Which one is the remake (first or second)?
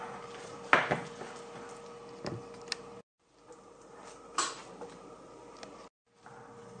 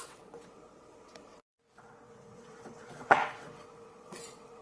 second